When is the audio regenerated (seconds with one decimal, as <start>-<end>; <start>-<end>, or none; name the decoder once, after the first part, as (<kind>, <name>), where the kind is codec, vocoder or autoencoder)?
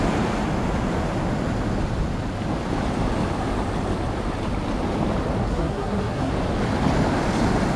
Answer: 5.4-6.3 (codec, SNAC)